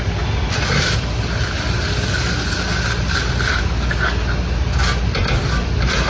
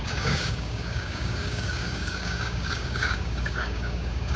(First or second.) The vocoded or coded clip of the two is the second